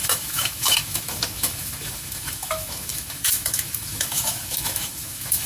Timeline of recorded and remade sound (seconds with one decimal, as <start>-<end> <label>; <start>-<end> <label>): 0.0-5.5 remade